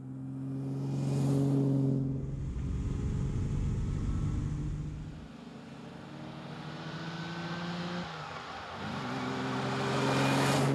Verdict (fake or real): real